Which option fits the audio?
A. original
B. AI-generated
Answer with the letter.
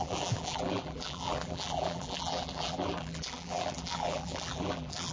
B